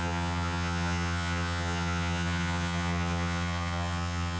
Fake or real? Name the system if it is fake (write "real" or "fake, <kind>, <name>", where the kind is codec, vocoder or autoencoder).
fake, vocoder, HiFi-GAN